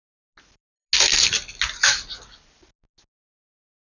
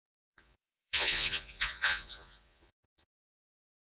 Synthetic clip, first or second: second